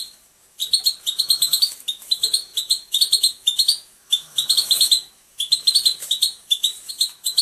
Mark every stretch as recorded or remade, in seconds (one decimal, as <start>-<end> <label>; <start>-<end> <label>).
0.0-0.6 remade; 0.6-1.2 recorded; 1.2-7.4 remade